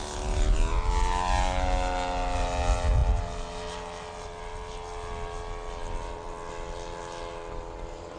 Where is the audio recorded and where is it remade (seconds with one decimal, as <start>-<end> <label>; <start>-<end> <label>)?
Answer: 0.0-8.2 recorded